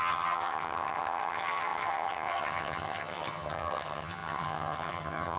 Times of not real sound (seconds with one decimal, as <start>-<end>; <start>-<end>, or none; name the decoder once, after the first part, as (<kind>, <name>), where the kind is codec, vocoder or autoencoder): 0.0-5.4 (vocoder, HiFi-GAN)